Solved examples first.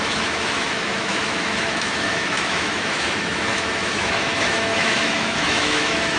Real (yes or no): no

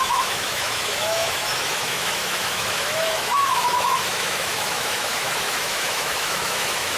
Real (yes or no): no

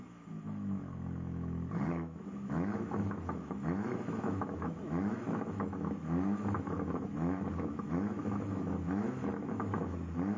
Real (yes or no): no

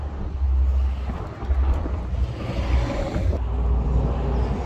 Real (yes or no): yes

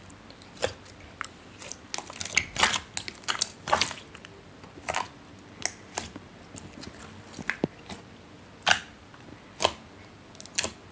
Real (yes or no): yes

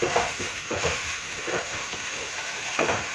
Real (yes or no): no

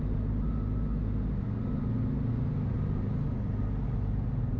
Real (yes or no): yes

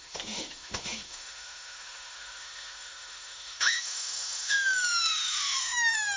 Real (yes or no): no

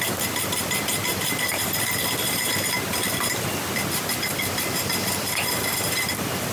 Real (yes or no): yes